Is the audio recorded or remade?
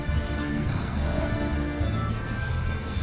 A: remade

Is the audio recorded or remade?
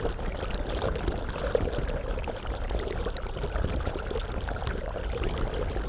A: recorded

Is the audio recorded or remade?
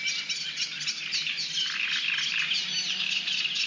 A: recorded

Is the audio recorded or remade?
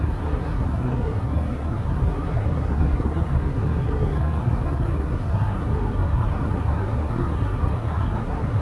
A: remade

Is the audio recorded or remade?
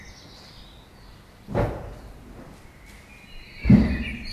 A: recorded